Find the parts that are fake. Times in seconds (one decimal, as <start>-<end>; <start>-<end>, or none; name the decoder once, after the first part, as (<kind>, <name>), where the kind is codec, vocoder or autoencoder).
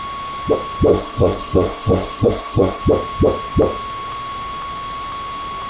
0.9-2.8 (codec, SNAC)